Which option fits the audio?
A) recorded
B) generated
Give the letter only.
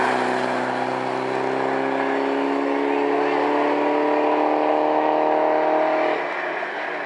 A